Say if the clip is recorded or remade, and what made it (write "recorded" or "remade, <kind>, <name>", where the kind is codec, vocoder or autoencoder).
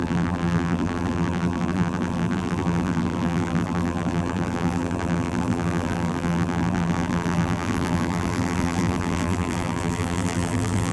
remade, vocoder, BigVGAN v2